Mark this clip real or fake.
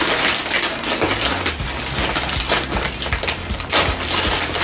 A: real